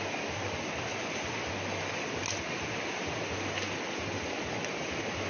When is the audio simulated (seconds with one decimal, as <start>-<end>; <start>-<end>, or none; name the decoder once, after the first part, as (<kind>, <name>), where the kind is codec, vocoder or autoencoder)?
none